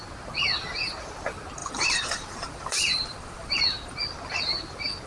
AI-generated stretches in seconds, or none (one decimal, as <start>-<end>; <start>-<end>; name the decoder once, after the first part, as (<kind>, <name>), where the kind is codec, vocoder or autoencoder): 1.6-3.5 (vocoder, BigVGAN v2)